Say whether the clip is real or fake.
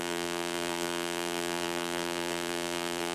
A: fake